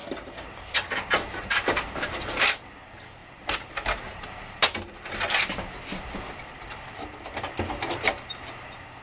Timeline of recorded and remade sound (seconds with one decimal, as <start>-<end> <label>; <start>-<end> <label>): 0.0-3.2 recorded; 3.2-5.1 remade; 5.1-9.0 recorded